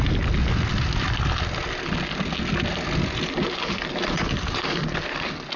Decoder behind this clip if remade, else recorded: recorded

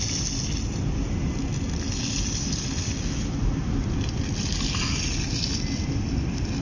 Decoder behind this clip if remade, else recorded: recorded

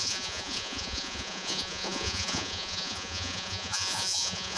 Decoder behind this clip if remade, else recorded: remade, vocoder, Vocos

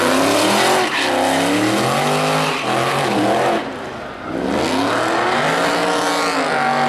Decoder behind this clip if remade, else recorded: recorded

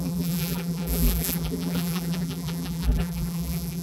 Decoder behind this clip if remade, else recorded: remade, vocoder, BigVGAN v2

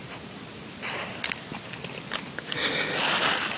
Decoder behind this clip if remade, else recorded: recorded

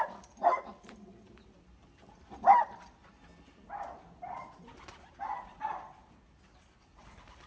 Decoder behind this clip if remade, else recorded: recorded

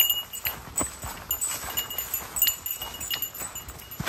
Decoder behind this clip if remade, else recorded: recorded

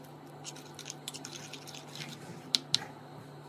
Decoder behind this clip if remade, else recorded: recorded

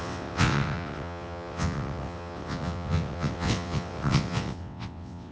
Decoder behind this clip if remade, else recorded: remade, vocoder, WaveNeXt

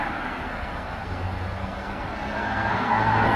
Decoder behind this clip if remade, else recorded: remade, codec, SNAC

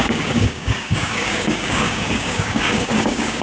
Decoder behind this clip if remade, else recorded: remade, codec, DAC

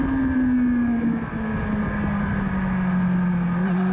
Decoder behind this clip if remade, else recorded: recorded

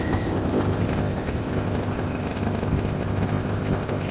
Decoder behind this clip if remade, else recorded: remade, codec, ZipCodec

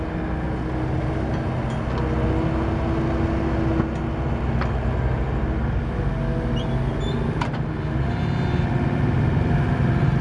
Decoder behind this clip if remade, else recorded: recorded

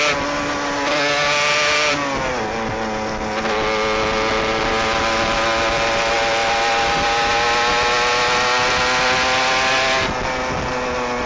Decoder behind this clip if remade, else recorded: recorded